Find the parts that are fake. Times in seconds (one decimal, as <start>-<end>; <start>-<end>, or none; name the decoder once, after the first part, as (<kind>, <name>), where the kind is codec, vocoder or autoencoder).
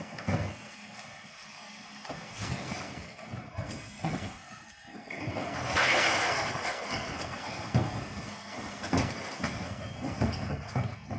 0.0-11.2 (codec, SNAC)